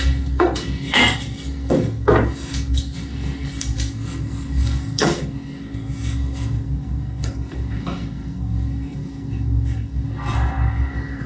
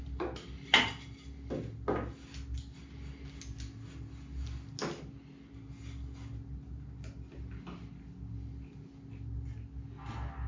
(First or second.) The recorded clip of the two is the second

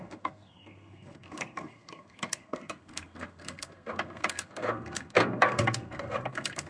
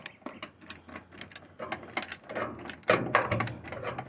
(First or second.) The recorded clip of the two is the second